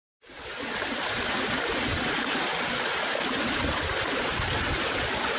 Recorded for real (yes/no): yes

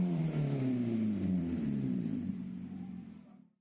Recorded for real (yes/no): no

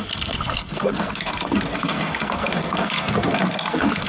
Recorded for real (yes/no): no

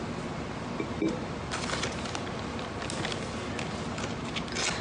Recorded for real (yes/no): yes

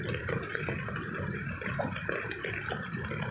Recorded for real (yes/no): yes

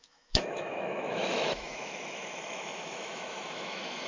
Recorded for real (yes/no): no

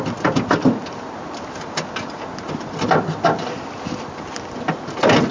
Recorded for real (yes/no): yes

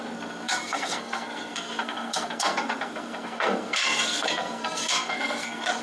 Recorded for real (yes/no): no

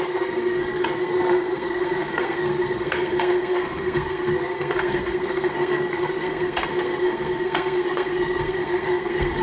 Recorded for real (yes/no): no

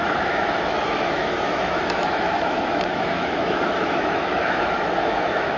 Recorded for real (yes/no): no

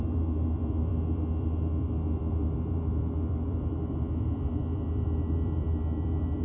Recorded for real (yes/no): no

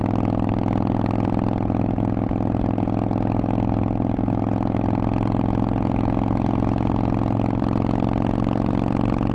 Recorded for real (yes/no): yes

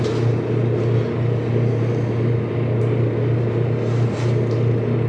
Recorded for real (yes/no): yes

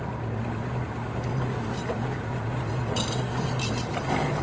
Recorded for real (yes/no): yes